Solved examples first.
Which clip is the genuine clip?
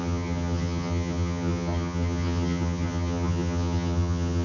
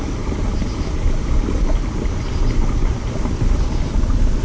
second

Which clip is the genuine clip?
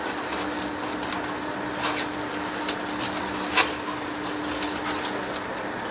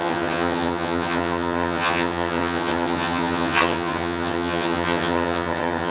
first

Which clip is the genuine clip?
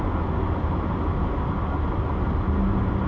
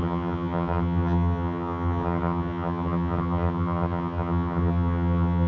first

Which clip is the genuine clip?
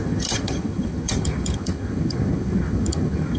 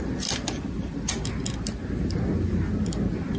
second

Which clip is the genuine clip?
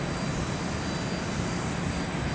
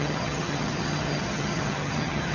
first